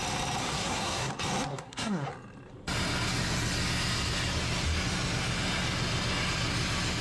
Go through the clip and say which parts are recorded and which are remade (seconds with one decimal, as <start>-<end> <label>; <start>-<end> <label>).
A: 0.0-0.4 recorded; 0.4-1.1 remade; 1.1-1.5 recorded; 1.5-2.1 remade; 2.1-7.0 recorded